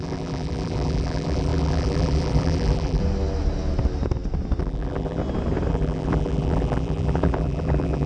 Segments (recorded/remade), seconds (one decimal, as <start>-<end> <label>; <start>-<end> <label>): 0.0-3.0 remade; 3.0-4.6 recorded; 4.6-5.2 remade; 5.2-5.7 recorded; 5.7-8.1 remade